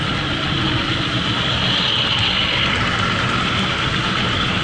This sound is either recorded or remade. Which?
recorded